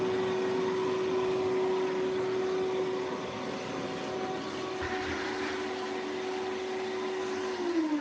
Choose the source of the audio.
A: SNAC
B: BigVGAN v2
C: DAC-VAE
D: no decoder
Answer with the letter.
D